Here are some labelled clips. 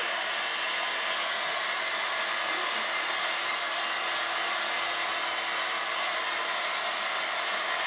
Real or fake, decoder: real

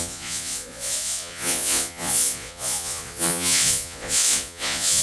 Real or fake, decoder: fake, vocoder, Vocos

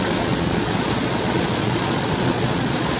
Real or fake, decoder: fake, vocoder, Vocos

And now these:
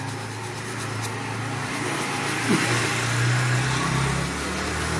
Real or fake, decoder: real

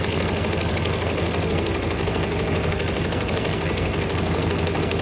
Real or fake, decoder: fake, codec, SNAC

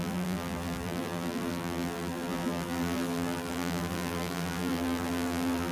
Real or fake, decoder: fake, vocoder, BigVGAN v2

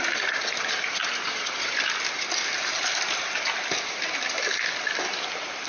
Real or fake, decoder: real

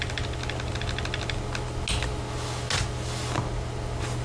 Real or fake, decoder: real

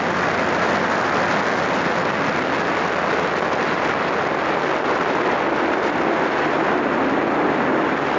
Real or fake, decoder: real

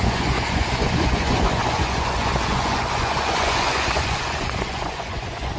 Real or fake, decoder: fake, vocoder, Vocos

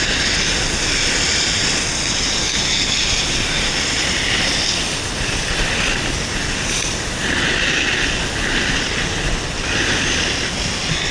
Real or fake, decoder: real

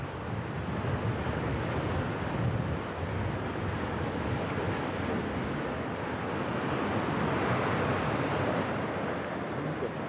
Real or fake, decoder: real